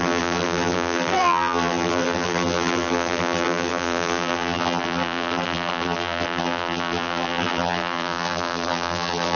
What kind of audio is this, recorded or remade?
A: remade